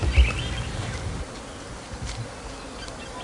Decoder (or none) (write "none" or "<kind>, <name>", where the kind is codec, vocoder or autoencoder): none